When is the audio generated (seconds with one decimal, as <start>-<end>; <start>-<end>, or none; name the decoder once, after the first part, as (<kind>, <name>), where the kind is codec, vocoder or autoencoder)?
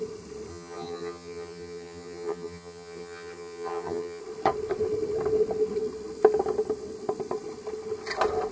0.5-4.2 (vocoder, HiFi-GAN)